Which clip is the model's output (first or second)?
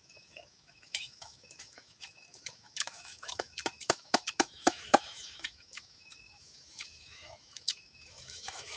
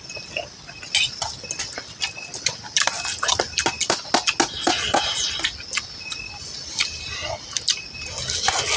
first